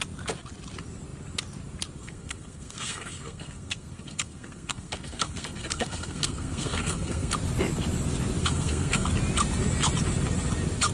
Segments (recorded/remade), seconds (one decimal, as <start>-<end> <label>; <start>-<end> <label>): 0.0-2.0 recorded; 2.0-7.3 remade; 7.3-8.4 recorded; 8.4-9.1 remade; 9.1-10.9 recorded